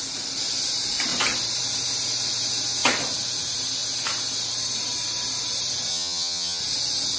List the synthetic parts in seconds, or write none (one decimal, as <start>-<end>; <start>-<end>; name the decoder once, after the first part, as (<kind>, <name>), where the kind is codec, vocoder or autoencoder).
5.9-6.6 (vocoder, HiFi-GAN)